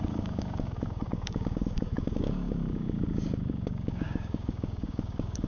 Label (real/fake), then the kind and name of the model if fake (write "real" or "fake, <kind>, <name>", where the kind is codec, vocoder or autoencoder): fake, codec, DAC